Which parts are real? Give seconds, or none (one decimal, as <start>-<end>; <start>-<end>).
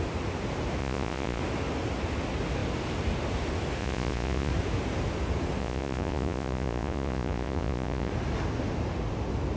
0.0-0.8; 1.4-3.8; 4.5-5.6; 8.1-9.6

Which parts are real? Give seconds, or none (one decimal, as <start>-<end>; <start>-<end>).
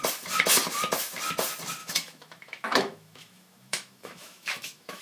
0.0-1.8